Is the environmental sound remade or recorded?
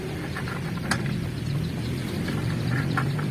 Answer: recorded